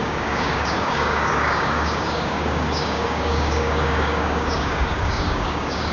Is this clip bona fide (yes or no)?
no